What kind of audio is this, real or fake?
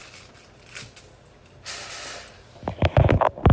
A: real